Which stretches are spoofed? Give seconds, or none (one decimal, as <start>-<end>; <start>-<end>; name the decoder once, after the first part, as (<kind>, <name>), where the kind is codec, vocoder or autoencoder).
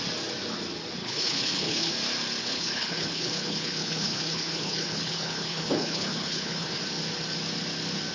1.0-1.9 (codec, HILCodec); 2.4-6.8